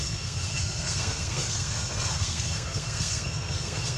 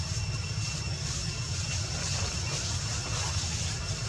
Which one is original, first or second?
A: second